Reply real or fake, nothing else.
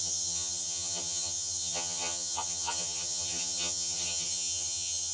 fake